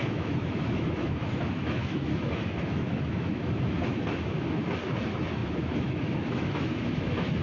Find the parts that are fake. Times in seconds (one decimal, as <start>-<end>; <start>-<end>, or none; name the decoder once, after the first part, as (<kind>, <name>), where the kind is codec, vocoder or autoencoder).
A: 0.0-7.4 (autoencoder, DAC-VAE)